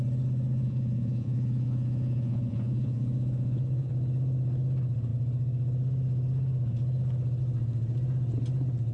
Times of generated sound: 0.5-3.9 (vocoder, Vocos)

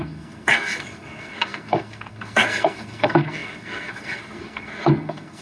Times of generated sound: 0.0-5.4 (codec, SNAC)

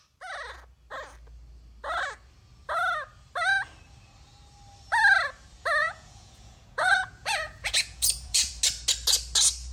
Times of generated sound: 5.8-8.5 (vocoder, Vocos)